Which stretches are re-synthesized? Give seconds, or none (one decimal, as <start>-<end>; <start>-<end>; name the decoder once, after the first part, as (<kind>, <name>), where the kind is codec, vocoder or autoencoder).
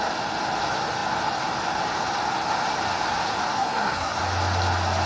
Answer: 3.5-4.2 (codec, SNAC)